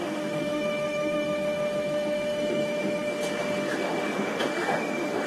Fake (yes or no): yes